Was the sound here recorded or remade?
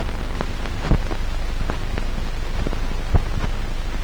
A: recorded